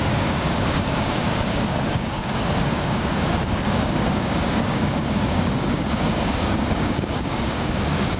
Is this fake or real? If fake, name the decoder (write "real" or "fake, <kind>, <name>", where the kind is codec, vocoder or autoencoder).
fake, codec, DAC